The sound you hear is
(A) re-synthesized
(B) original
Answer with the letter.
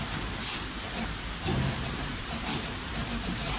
A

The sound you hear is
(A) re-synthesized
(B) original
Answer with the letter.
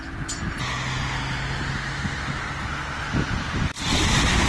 B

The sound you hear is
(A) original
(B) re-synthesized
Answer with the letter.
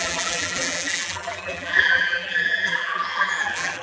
B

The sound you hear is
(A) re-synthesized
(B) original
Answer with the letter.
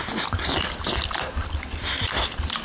B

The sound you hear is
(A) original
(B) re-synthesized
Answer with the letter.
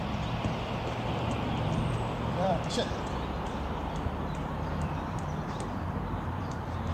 B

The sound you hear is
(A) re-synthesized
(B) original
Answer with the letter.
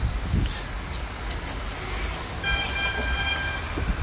B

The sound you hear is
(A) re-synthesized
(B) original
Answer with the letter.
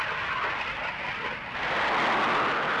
B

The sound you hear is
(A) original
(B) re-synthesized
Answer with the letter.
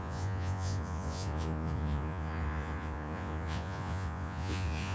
B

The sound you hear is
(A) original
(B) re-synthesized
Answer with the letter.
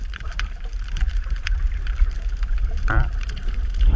B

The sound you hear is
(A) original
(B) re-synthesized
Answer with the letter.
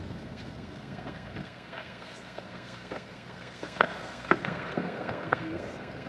B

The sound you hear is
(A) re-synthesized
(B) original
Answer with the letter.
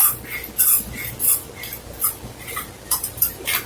B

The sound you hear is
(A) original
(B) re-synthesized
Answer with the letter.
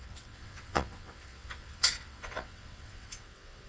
B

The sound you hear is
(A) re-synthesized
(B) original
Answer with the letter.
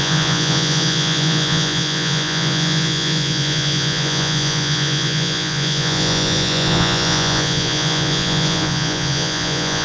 A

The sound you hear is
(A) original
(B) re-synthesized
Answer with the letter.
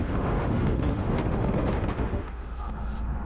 B